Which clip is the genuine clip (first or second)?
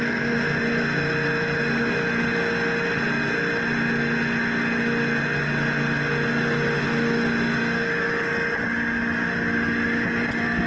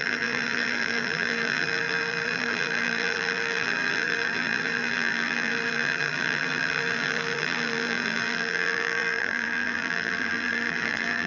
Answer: first